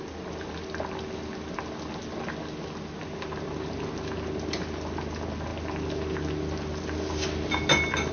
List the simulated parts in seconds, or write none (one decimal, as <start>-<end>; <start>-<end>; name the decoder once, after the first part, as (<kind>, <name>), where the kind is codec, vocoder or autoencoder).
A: none